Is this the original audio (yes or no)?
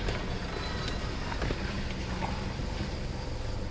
yes